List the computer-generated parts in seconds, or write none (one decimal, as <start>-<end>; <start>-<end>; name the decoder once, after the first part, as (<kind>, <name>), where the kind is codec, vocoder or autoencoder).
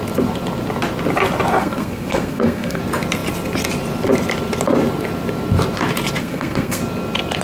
1.6-2.8 (codec, SNAC); 6.2-6.8